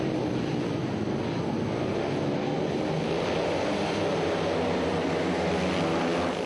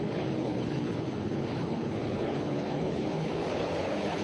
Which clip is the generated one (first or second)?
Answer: second